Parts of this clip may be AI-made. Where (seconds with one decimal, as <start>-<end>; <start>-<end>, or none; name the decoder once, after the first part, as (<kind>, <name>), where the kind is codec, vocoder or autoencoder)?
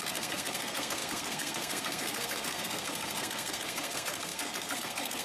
0.0-5.2 (codec, SNAC)